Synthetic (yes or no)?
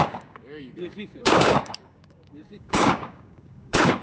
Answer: yes